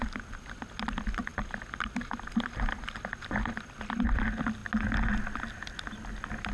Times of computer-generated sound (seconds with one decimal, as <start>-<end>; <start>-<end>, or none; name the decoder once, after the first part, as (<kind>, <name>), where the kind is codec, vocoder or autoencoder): none